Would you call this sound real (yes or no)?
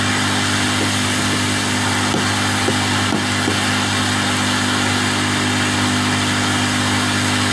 yes